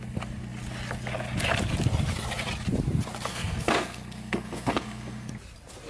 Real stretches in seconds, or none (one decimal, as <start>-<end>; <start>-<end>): 0.0-3.3; 5.3-5.9